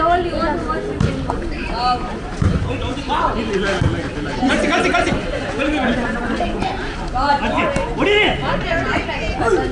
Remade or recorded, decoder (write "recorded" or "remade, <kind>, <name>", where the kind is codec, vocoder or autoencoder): recorded